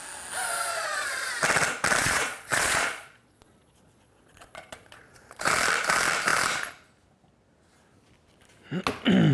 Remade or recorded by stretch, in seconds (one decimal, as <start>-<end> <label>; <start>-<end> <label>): 0.0-0.7 recorded; 0.7-1.3 remade; 1.3-2.0 recorded; 2.0-5.4 remade; 5.4-9.3 recorded